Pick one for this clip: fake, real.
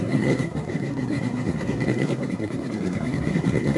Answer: fake